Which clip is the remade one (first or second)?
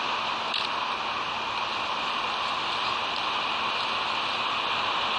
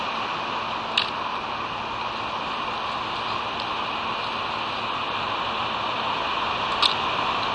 first